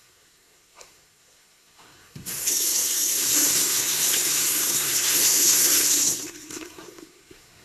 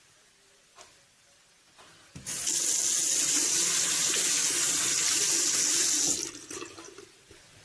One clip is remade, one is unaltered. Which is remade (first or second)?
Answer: first